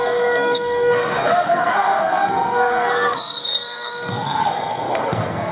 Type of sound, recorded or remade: remade